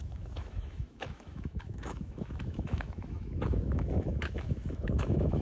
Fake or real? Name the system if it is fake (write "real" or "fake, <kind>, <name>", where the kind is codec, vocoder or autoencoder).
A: fake, autoencoder, DAC-VAE